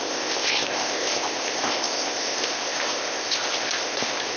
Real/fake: fake